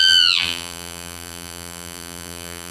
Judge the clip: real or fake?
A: fake